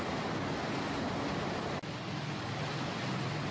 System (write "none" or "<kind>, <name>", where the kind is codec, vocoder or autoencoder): none